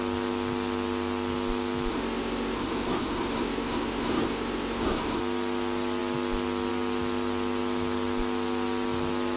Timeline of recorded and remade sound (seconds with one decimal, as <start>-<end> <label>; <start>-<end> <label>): 0.0-1.9 recorded; 1.9-5.2 remade; 5.2-9.4 recorded